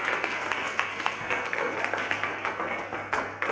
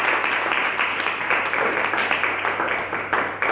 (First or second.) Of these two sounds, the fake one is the first